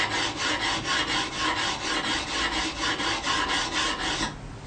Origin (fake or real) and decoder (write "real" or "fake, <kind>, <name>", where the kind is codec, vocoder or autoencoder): real